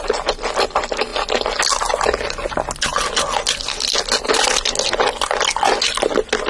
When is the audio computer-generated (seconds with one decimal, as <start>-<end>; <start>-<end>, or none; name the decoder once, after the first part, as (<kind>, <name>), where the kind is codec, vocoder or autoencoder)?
none